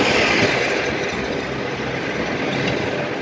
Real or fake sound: real